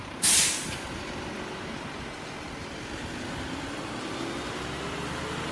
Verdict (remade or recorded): recorded